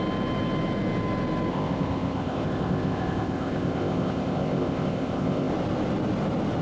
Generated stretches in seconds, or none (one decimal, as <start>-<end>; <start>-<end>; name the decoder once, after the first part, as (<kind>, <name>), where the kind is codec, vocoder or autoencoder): 1.5-5.5 (codec, ZipCodec)